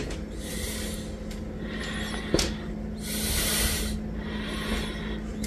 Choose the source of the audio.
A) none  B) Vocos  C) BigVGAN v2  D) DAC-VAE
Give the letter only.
A